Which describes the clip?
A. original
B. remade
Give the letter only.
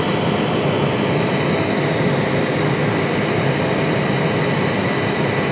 A